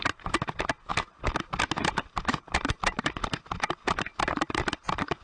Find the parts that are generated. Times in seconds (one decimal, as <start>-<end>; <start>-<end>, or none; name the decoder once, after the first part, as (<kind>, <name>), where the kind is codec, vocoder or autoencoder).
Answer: none